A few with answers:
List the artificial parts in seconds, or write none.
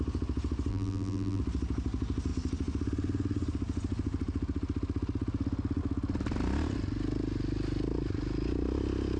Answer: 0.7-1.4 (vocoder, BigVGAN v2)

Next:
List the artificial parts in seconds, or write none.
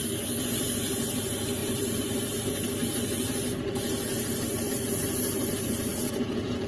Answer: 5.9-6.7 (vocoder, Vocos)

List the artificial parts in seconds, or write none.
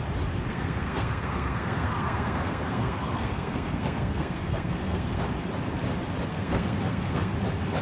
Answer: 0.5-5.2 (codec, SNAC); 6.3-7.3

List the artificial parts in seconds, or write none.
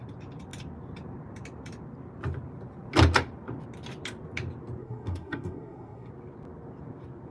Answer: 4.8-6.1 (codec, SNAC)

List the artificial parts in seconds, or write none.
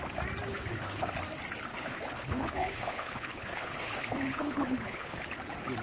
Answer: 0.5-1.1 (codec, HILCodec); 1.7-5.2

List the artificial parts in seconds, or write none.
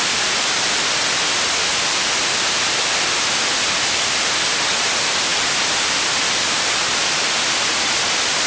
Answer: none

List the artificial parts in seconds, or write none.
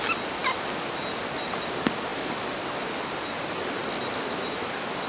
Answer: none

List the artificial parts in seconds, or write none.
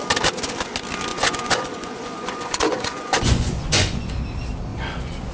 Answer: 1.1-4.1 (vocoder, Vocos); 4.7-5.3